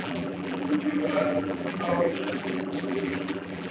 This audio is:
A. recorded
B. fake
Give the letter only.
B